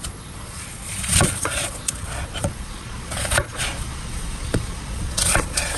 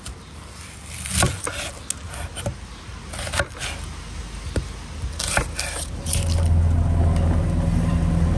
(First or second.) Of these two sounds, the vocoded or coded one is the first